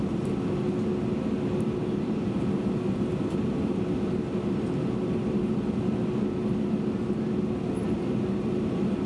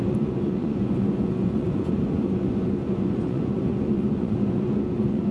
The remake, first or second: second